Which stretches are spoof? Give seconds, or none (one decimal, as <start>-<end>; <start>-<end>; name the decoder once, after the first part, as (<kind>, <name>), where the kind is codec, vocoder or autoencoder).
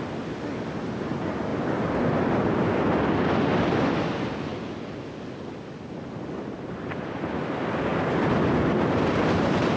none